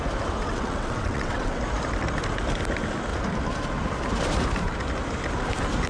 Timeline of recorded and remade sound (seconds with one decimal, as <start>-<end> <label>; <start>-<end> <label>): 0.0-0.4 recorded; 0.4-1.6 remade; 1.6-5.9 recorded